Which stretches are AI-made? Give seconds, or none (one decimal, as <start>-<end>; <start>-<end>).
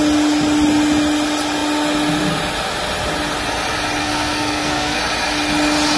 4.0-5.0